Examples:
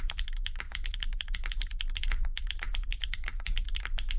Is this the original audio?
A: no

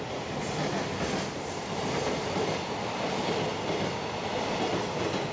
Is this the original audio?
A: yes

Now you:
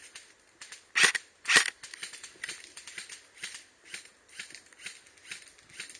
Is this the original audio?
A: yes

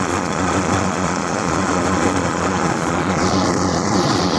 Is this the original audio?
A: no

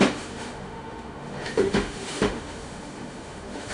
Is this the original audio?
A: no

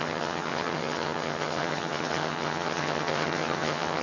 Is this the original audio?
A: no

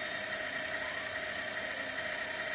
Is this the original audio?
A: yes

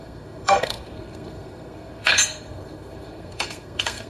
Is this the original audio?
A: no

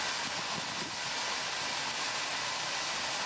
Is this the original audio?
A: yes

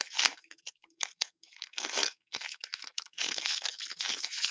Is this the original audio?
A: no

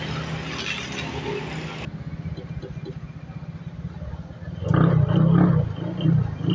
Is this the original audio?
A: yes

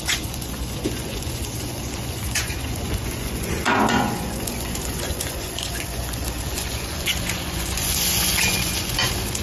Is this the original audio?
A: no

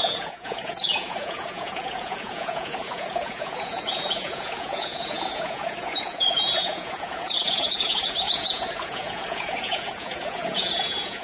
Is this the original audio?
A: no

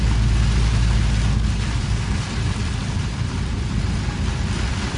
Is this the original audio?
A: no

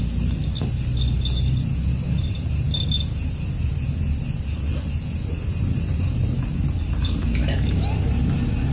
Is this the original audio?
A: yes